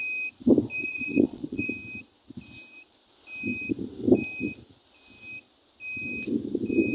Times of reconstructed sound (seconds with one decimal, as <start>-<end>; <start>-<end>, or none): 0.8-1.7